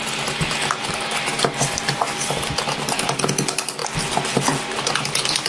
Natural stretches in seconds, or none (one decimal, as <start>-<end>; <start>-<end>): 0.0-5.5